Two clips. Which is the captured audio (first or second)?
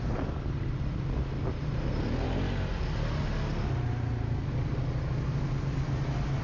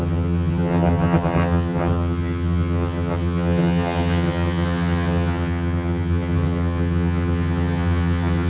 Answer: first